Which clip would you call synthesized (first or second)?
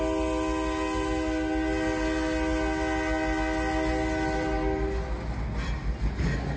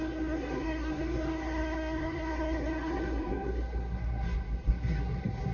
second